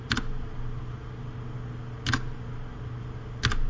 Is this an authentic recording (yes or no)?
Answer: yes